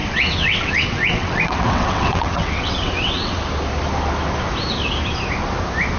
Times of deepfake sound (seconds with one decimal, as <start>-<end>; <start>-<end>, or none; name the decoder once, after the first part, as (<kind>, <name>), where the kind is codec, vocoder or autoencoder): 0.0-3.4 (vocoder, WaveNeXt)